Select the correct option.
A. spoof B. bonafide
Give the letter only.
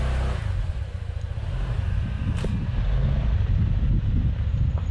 B